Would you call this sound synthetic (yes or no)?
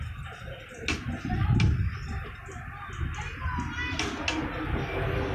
no